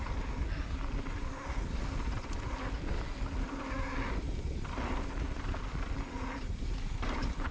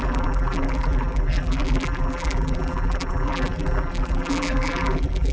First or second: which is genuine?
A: first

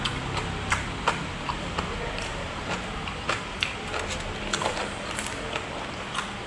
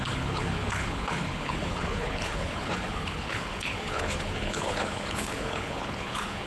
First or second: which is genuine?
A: first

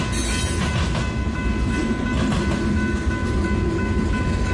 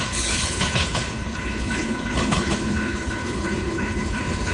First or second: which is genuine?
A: first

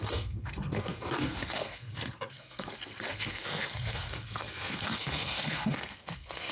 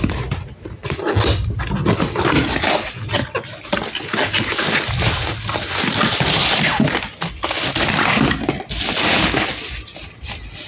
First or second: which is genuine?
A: second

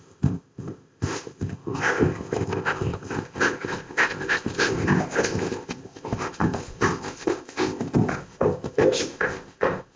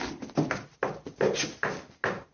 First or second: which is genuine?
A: second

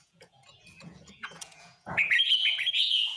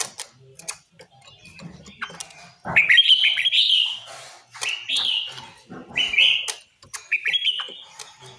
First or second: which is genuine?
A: second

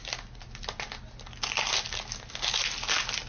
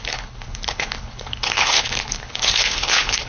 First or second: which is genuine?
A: first